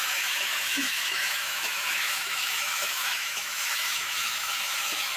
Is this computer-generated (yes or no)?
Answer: yes